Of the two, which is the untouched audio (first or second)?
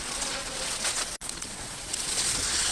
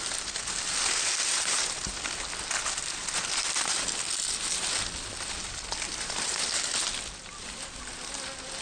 second